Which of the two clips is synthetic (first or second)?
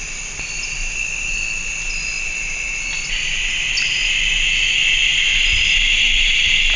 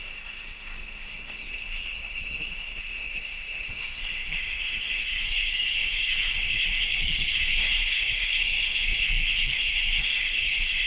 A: second